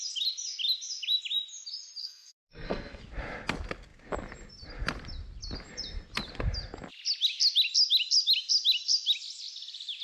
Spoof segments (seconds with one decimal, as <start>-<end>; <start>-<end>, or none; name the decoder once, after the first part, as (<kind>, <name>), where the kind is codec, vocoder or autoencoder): 2.0-3.0 (codec, SNAC)